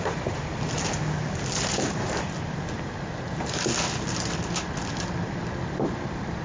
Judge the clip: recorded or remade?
recorded